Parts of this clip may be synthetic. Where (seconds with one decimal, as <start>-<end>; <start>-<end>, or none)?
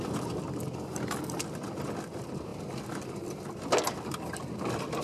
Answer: 0.0-5.0